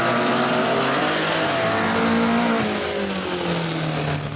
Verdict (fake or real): real